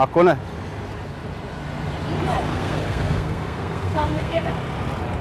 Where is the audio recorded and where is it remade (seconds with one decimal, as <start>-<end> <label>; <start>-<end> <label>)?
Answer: 0.0-2.5 recorded; 2.5-4.5 remade; 4.5-5.2 recorded